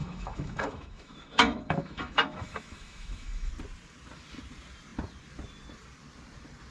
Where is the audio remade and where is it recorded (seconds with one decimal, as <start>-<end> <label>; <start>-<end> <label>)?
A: 0.0-3.5 remade; 3.5-6.7 recorded